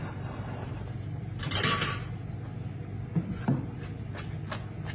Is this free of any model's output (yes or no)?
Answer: yes